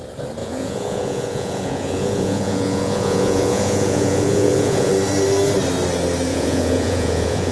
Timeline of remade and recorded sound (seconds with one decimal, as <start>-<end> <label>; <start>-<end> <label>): 0.0-0.4 recorded; 0.4-4.9 remade; 4.9-6.3 recorded; 6.3-7.5 remade